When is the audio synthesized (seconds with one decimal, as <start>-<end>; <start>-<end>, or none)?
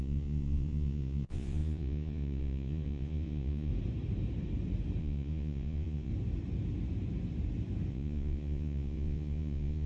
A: 0.0-3.7; 5.0-6.1; 7.9-9.9